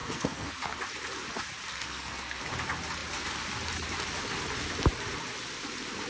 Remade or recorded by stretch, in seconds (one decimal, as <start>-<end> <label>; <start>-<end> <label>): 0.0-0.8 remade; 0.8-1.7 recorded; 1.7-2.4 remade; 2.4-6.1 recorded